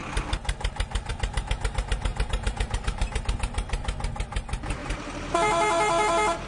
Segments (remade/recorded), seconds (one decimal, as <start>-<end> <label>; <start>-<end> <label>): 0.0-2.1 recorded; 2.1-3.2 remade; 3.2-4.8 recorded; 4.8-6.5 remade